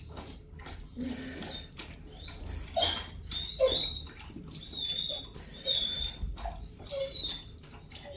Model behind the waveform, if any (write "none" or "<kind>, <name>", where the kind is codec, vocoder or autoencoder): none